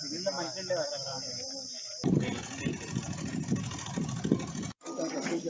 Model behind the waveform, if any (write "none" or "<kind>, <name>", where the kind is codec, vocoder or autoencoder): none